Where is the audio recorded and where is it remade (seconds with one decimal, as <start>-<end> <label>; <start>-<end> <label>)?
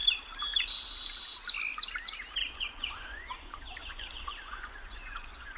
0.0-2.4 recorded; 2.4-5.6 remade